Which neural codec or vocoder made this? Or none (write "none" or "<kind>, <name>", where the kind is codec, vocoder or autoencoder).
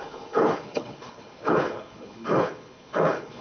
codec, HILCodec